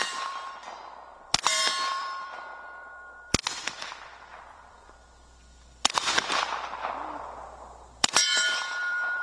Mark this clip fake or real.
fake